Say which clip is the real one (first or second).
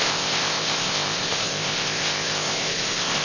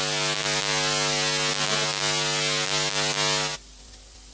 second